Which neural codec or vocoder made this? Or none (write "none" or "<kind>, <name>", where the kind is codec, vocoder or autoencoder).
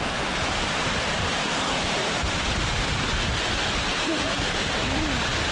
vocoder, BigVGAN v2